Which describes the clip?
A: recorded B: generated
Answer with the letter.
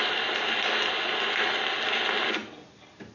A